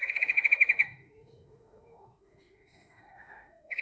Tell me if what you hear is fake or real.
fake